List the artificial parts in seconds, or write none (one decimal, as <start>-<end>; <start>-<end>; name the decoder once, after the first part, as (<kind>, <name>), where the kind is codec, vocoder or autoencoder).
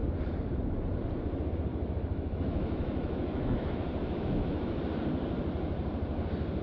1.7-4.8 (autoencoder, DAC-VAE)